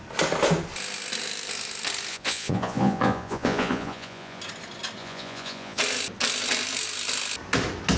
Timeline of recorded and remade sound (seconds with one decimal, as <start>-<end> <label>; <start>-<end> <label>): 0.0-2.1 recorded; 2.1-4.4 remade; 4.4-5.0 recorded; 5.0-5.8 remade; 5.8-8.0 recorded